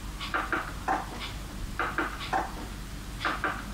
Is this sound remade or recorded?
recorded